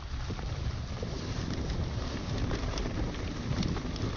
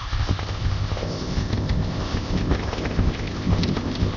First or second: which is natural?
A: first